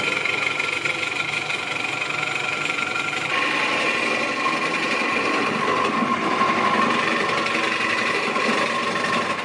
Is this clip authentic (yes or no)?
yes